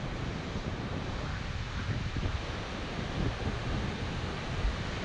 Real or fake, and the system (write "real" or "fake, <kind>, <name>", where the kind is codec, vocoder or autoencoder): real